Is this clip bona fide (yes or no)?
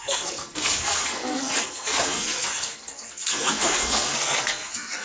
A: no